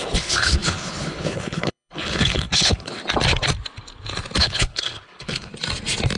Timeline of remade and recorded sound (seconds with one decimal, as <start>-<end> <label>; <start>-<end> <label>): 0.0-3.0 remade; 3.0-4.4 recorded; 4.4-5.5 remade; 5.5-6.2 recorded